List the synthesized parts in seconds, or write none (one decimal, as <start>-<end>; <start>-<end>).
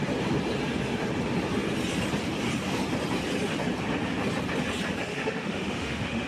5.1-6.3